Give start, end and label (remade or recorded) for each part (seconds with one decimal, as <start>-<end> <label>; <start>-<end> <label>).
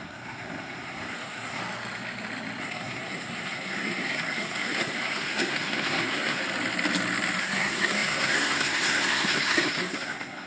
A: 0.0-1.6 remade; 1.6-2.6 recorded; 2.6-6.4 remade; 6.4-7.4 recorded; 7.4-10.5 remade